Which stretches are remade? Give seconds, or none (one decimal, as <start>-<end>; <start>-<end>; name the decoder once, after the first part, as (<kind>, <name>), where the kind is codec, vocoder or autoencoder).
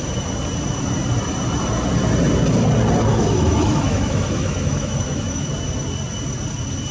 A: 3.1-5.5 (autoencoder, DAC-VAE)